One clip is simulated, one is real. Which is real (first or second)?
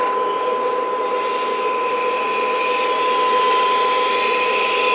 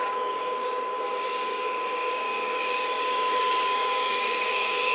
first